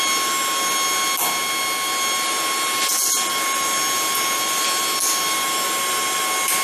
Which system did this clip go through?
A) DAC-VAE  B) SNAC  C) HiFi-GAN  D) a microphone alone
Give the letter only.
D